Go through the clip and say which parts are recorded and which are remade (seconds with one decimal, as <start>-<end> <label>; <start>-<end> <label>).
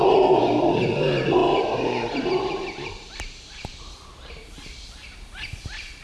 0.0-1.4 recorded; 1.4-4.5 remade; 4.5-6.0 recorded